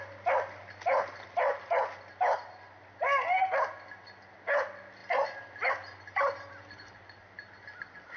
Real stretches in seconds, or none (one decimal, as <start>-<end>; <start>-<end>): 0.0-8.2